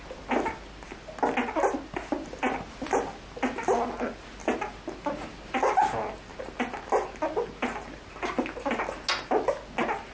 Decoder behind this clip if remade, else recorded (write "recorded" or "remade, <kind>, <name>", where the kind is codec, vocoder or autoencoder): recorded